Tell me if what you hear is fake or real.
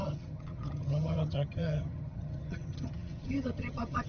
fake